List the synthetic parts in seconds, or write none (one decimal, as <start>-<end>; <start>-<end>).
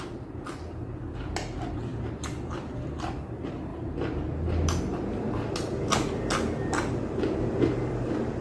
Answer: none